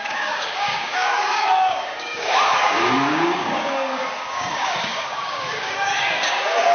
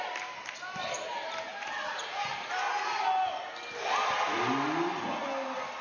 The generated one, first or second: first